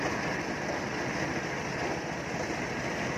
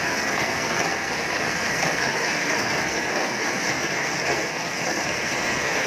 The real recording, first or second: first